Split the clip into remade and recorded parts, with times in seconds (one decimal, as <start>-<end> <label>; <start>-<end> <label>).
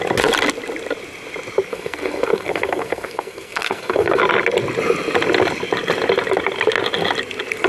0.0-1.7 recorded; 1.7-4.2 remade; 4.2-7.7 recorded